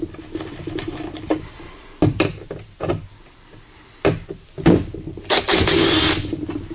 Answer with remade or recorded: recorded